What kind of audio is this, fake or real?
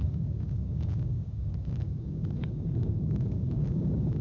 fake